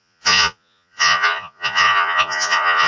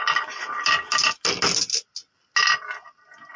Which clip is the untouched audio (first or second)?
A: second